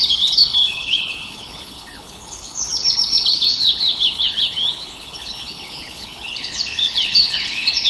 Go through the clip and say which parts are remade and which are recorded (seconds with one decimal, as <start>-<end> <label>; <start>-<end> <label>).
0.0-7.9 remade